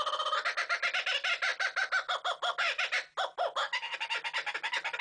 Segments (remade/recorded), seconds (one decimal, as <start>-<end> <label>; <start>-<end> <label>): 0.0-5.0 recorded